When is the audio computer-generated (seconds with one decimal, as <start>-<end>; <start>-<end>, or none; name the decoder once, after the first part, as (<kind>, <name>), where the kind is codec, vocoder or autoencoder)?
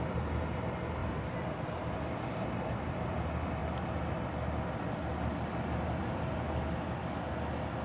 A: 1.0-2.9 (vocoder, BigVGAN v2)